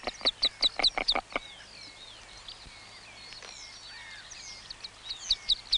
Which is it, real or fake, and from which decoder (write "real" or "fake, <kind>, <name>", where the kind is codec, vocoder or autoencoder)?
real